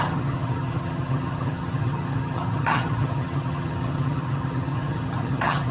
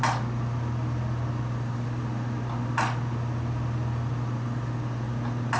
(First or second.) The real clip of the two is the second